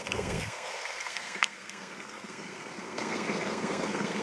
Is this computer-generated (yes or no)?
yes